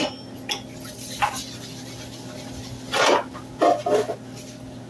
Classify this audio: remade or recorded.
recorded